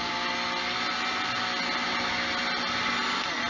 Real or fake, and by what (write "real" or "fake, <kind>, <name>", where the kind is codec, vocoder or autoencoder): real